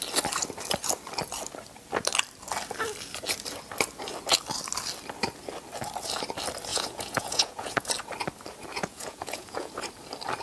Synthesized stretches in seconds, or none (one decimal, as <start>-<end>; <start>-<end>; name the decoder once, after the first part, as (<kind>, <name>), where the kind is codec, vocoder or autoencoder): 6.7-7.9 (vocoder, Vocos); 8.7-9.7